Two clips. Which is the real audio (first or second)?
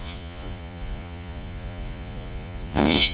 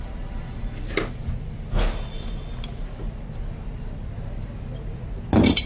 second